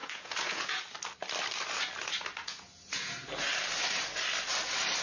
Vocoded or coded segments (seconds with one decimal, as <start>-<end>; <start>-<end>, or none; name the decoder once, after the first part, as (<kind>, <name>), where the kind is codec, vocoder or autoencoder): 0.0-0.8 (vocoder, Vocos); 2.5-3.3